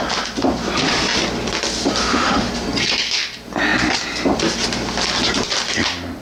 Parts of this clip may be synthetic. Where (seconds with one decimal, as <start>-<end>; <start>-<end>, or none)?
2.0-2.5